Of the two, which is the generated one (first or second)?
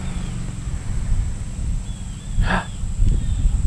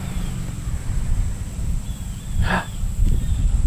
second